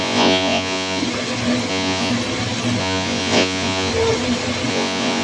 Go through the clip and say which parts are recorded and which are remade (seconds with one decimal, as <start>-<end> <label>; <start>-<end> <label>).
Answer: 0.0-1.0 remade; 1.0-1.7 recorded; 1.7-2.1 remade; 2.1-2.8 recorded; 2.8-3.9 remade; 3.9-4.7 recorded; 4.7-5.2 remade